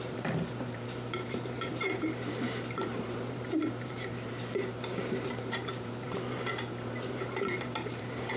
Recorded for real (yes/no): no